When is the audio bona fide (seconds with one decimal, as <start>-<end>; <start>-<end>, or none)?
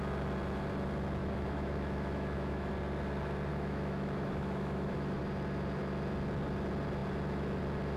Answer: 0.0-1.2; 2.7-3.5; 5.2-8.0